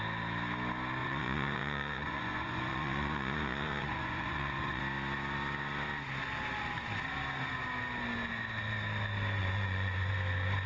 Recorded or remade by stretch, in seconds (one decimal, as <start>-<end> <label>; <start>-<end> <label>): 0.0-1.0 recorded; 1.0-4.8 remade; 4.8-9.4 recorded; 9.4-10.1 remade; 10.1-10.7 recorded